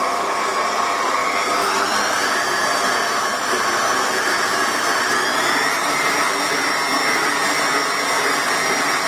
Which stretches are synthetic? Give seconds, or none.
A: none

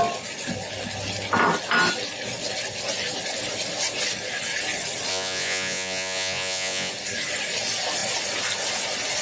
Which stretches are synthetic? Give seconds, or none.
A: 5.1-6.9 (vocoder, Vocos)